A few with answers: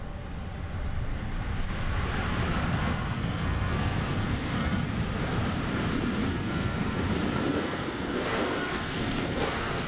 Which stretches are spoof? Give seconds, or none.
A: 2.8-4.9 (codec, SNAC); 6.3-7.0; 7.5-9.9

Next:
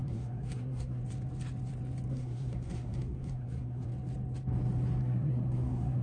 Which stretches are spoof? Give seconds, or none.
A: 0.0-1.0 (codec, SNAC); 2.1-3.9; 5.0-6.0

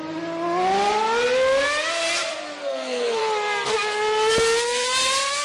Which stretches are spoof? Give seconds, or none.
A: 2.6-3.2 (codec, SNAC)

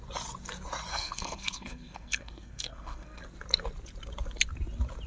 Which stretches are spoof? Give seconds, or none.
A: 0.9-3.2 (codec, SNAC)

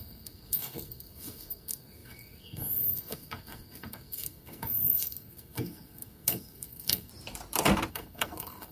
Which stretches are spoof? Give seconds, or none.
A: 0.0-7.1 (codec, SNAC); 7.9-8.7

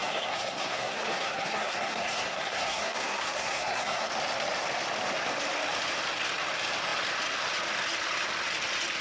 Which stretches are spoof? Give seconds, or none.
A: 0.0-4.1 (codec, SNAC)